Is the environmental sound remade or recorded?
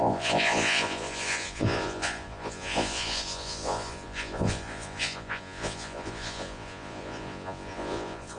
remade